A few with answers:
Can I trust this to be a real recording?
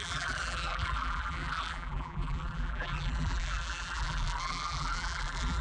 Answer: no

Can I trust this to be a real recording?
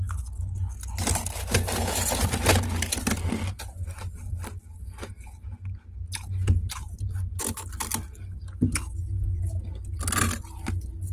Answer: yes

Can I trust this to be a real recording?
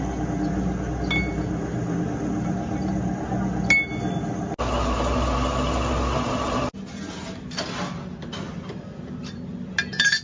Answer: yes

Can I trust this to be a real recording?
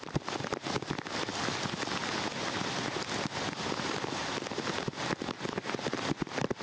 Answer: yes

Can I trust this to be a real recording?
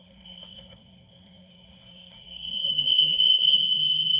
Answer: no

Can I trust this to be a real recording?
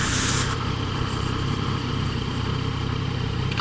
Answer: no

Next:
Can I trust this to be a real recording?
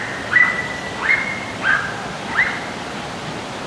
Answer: yes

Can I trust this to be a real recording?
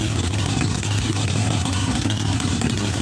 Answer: no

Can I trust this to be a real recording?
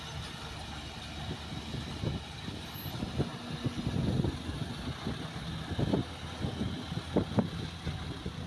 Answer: yes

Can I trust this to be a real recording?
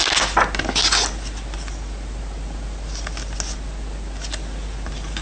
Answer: yes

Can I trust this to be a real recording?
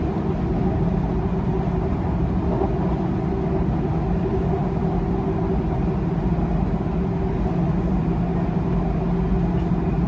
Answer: yes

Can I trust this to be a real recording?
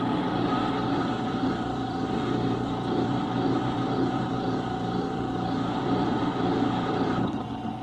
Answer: no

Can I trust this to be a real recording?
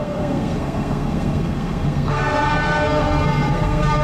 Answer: no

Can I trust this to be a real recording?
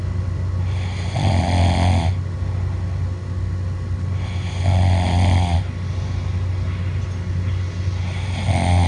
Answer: yes